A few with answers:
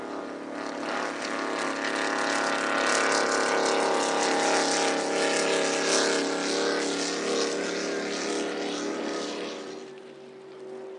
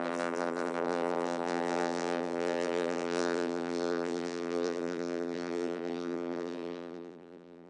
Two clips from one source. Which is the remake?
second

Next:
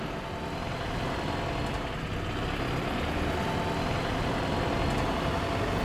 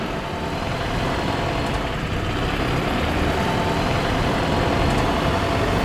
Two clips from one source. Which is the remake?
second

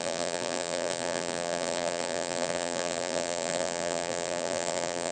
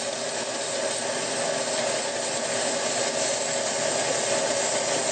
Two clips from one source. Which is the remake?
first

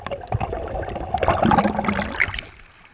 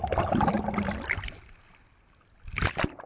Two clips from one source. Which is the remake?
second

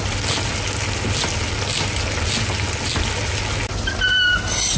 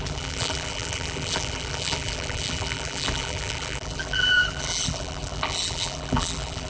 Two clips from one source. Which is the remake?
second